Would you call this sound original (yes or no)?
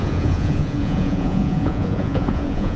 no